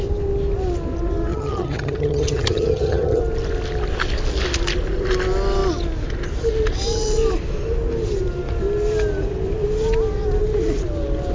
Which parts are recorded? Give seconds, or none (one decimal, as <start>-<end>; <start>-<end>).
0.0-1.3; 3.2-11.3